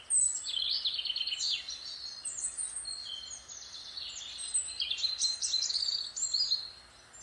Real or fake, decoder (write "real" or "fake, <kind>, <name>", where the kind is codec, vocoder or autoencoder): real